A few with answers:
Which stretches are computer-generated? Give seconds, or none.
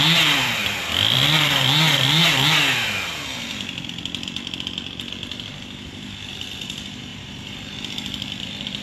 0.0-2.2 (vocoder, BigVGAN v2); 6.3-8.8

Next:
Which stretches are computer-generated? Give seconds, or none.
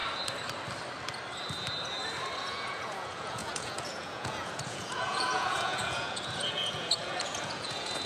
2.4-8.1 (vocoder, Vocos)